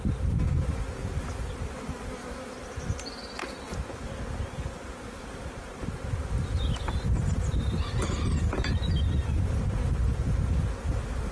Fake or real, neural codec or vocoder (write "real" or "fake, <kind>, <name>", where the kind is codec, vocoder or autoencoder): real